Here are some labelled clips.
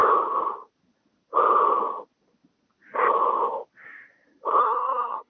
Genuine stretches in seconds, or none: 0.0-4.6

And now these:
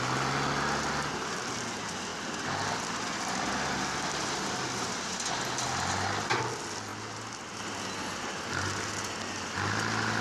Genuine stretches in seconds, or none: 0.0-10.2

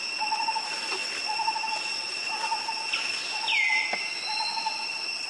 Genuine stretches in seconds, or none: 0.0-5.3

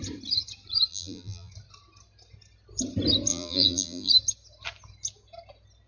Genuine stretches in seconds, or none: 0.0-0.9; 1.5-3.3; 4.1-5.9

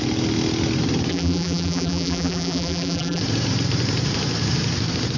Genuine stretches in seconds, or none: 0.0-1.1; 3.2-5.2

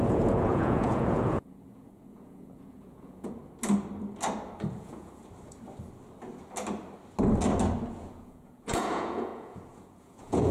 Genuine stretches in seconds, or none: 3.4-4.7; 5.2-7.9